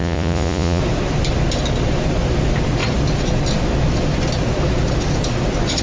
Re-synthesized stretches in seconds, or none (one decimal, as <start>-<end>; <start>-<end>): 0.0-0.8